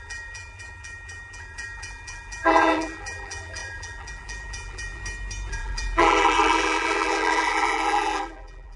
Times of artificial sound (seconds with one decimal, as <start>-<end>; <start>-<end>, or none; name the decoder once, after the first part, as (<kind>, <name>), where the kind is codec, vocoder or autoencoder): 0.0-5.0 (vocoder, BigVGAN v2); 5.5-8.8